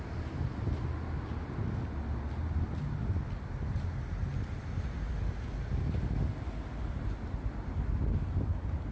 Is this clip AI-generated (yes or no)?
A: no